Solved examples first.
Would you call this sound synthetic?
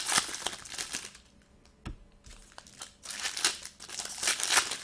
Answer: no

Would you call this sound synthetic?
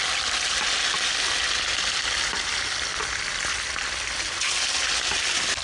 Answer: no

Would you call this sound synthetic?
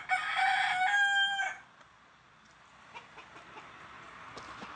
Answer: no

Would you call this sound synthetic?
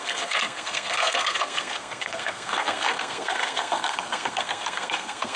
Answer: yes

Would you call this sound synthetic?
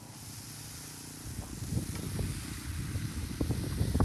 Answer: no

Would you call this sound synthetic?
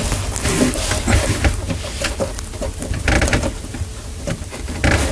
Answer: no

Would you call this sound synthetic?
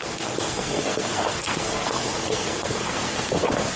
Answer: yes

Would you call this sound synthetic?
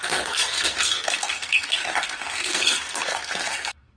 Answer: yes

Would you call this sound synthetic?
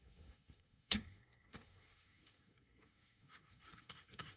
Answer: yes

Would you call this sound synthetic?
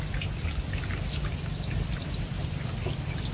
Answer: no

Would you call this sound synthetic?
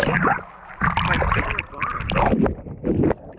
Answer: no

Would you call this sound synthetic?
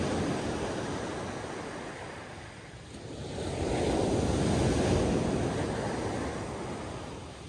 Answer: no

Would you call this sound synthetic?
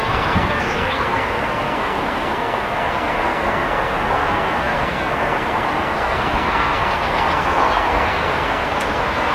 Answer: yes